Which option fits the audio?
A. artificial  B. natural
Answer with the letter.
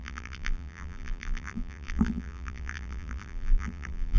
A